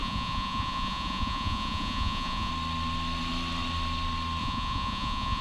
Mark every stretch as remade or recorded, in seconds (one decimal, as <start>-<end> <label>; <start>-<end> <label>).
0.0-2.5 remade; 2.5-4.4 recorded; 4.4-5.4 remade